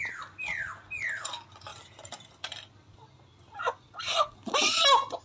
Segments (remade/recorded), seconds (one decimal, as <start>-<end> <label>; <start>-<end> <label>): 0.0-5.2 recorded